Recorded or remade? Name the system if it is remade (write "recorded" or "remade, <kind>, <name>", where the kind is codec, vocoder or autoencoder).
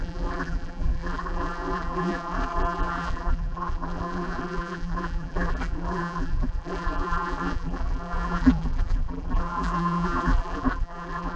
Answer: remade, vocoder, BigVGAN v2